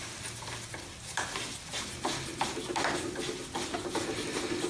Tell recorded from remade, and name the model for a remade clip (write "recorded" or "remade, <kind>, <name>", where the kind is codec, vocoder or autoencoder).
recorded